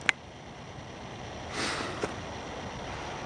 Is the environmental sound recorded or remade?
recorded